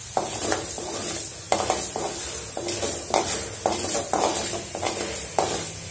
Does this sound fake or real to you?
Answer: real